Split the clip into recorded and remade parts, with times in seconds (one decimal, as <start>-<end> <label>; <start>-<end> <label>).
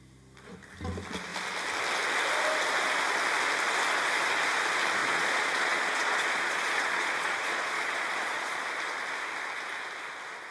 0.0-5.0 recorded; 5.0-8.6 remade; 8.6-10.5 recorded